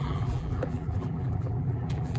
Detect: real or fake fake